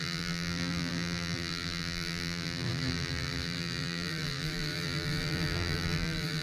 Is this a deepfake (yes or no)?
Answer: yes